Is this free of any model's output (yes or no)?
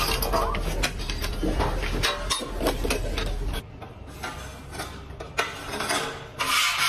yes